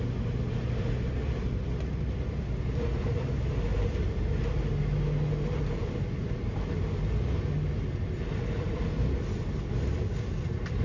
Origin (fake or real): real